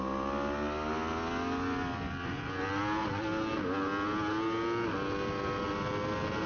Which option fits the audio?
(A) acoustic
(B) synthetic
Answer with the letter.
A